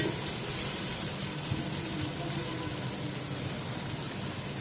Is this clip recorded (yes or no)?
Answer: yes